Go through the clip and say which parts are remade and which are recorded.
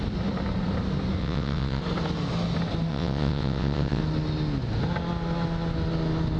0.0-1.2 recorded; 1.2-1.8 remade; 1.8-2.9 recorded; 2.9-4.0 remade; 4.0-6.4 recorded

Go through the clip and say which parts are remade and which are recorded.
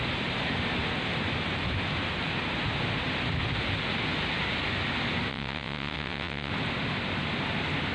0.0-5.3 recorded; 5.3-6.5 remade; 6.5-7.9 recorded